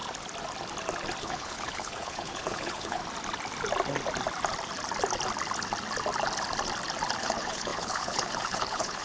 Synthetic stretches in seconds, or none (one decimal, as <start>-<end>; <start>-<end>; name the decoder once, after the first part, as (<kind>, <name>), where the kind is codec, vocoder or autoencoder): 1.2-3.0 (codec, HILCodec); 7.2-9.0